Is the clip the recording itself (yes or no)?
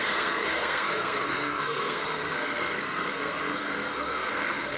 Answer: no